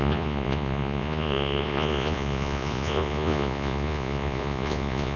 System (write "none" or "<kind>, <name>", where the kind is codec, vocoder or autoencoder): vocoder, Vocos